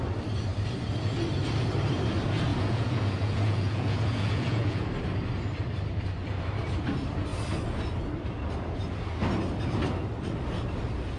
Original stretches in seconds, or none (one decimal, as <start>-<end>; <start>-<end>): 0.0-2.5; 4.9-11.2